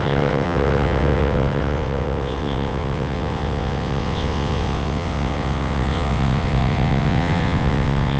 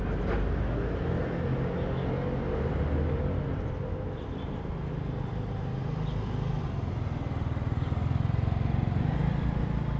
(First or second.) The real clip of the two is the second